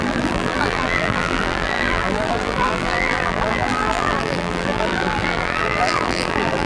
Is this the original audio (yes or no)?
no